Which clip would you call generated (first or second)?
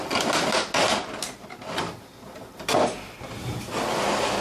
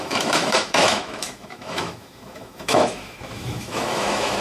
second